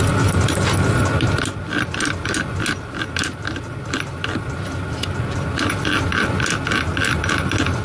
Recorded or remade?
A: recorded